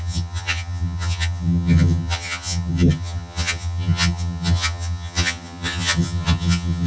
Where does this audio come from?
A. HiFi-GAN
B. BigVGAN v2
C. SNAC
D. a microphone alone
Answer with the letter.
A